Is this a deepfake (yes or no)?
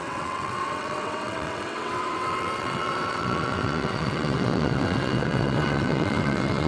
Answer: yes